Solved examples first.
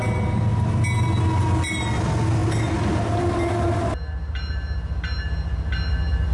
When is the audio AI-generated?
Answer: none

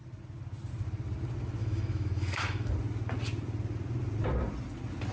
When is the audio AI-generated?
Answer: 1.6-2.7 (autoencoder, DAC-VAE)

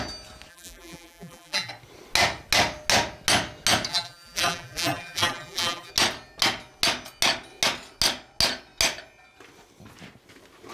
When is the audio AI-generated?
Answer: 0.5-1.7 (vocoder, BigVGAN v2); 3.9-5.9

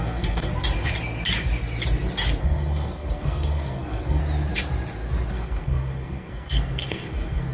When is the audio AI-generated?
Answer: 0.0-0.5 (codec, SNAC); 2.4-4.2; 5.3-7.5

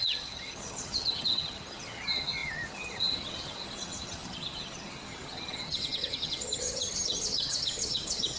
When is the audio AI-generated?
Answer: 0.0-8.4 (vocoder, HiFi-GAN)